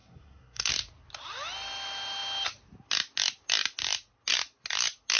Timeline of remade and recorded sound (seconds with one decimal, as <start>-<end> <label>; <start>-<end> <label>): 0.0-0.7 remade; 0.7-5.2 recorded